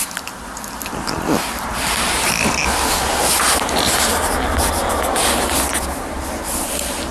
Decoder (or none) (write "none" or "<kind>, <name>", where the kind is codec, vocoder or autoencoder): none